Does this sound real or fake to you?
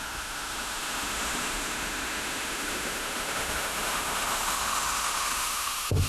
fake